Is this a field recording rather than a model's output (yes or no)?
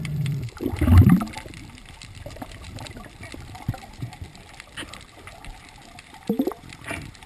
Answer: no